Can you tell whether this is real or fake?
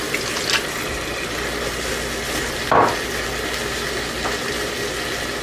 real